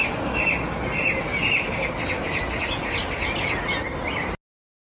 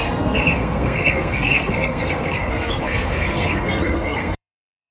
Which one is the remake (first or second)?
second